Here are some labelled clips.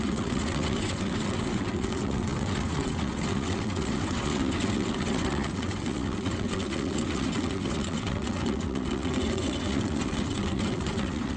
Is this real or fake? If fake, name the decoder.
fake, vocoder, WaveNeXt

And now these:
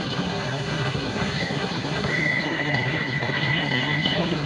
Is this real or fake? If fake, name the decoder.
fake, codec, SNAC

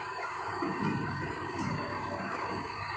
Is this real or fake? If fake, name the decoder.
fake, codec, DAC